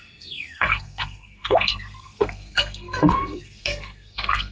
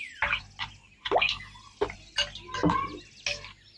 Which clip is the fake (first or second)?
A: first